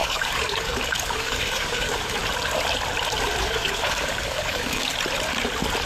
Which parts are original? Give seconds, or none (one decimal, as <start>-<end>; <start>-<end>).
2.2-3.4; 4.9-5.9